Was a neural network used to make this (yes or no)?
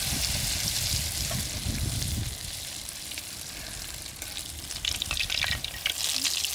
no